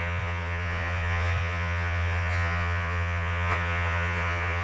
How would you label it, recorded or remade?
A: remade